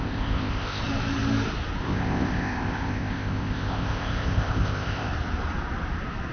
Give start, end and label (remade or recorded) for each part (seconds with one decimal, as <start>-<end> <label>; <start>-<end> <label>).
0.0-0.8 remade; 0.8-1.8 recorded; 1.8-5.1 remade; 5.1-6.3 recorded